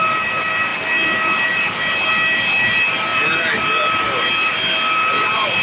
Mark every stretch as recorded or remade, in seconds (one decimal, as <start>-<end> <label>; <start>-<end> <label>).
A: 0.0-5.6 recorded